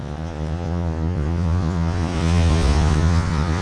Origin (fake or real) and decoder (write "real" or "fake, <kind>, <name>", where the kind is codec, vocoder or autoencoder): fake, vocoder, Vocos